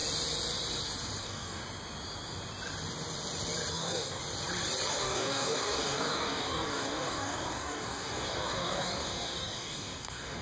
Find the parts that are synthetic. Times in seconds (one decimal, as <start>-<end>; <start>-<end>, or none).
1.2-1.6; 3.7-4.2; 4.9-10.4